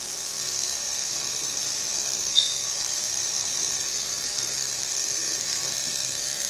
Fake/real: fake